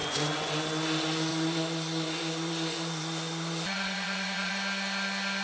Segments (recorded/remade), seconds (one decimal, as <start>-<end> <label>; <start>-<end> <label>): 0.0-0.5 remade; 0.5-1.3 recorded; 1.3-4.5 remade; 4.5-5.4 recorded